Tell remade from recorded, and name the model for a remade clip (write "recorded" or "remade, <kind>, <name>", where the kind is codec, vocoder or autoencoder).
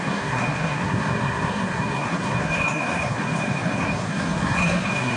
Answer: remade, codec, SNAC